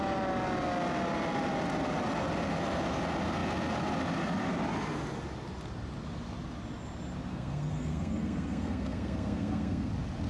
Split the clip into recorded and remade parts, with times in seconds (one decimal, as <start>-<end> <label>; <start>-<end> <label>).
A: 0.0-7.3 recorded; 7.3-9.9 remade; 9.9-10.3 recorded